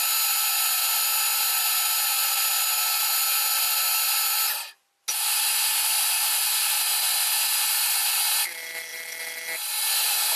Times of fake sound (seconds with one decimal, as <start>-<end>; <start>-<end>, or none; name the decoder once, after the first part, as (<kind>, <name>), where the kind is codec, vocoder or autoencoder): none